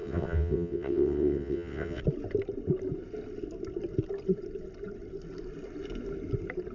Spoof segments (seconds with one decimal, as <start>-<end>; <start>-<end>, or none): 0.0-2.0